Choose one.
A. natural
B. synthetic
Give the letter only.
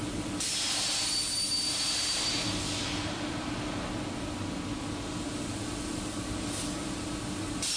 A